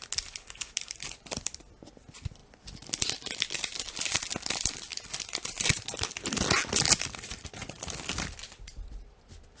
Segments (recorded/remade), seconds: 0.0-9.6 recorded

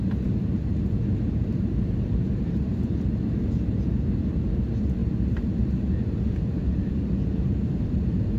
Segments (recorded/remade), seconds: 0.0-5.0 remade; 5.0-6.1 recorded; 6.1-8.4 remade

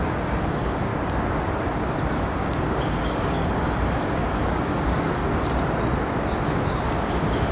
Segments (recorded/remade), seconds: 0.0-0.9 remade; 0.9-2.1 recorded; 2.1-5.2 remade; 5.2-6.2 recorded; 6.2-7.5 remade

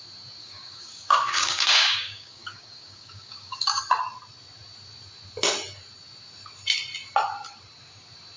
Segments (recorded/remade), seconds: 0.0-0.4 recorded; 0.4-3.8 remade; 3.8-8.4 recorded

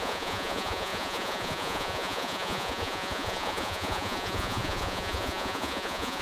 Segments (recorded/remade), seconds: 0.0-6.2 remade